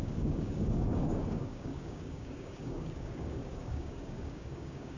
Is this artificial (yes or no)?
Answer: yes